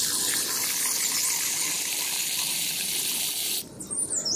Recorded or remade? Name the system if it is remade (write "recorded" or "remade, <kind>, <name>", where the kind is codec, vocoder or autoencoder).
recorded